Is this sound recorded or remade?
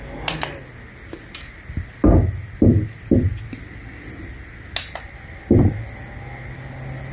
recorded